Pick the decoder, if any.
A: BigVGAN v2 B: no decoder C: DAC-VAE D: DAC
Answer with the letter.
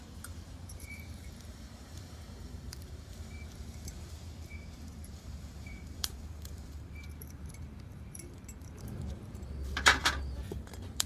A